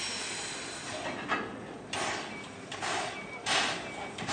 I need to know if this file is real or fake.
real